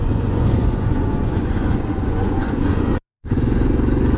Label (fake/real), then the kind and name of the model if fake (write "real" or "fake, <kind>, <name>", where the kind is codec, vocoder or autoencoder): fake, vocoder, Vocos